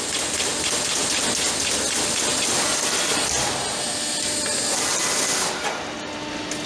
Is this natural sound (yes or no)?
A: yes